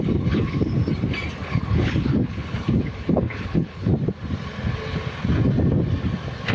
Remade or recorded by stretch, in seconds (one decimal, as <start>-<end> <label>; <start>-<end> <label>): 0.0-0.8 remade; 0.8-1.4 recorded; 1.4-3.9 remade; 3.9-6.5 recorded

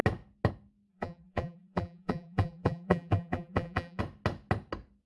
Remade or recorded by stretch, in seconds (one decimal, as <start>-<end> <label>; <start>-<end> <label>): 0.0-0.9 recorded; 0.9-4.0 remade; 4.0-5.1 recorded

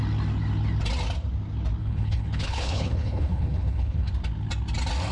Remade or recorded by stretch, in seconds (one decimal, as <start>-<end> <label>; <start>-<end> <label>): 0.0-1.8 recorded; 1.8-4.1 remade; 4.1-5.1 recorded

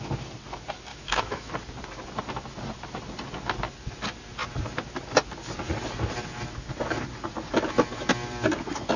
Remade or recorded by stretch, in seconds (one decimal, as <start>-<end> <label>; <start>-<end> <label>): 0.0-0.9 recorded; 0.9-1.5 remade; 1.5-9.0 recorded

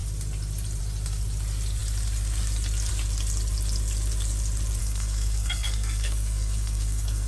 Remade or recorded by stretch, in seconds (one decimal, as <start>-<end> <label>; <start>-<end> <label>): 0.0-4.8 recorded; 4.8-7.3 remade

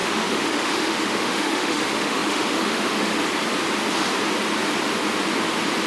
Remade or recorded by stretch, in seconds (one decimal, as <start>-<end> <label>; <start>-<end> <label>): 0.0-3.2 remade; 3.2-5.9 recorded